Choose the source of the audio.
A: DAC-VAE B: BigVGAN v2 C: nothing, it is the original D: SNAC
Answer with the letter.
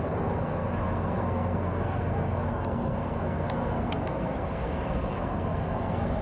D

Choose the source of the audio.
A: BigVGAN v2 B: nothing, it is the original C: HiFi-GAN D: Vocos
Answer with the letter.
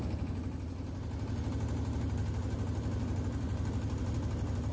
B